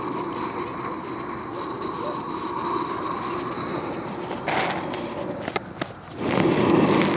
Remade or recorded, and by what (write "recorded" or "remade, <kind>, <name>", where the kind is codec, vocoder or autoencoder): recorded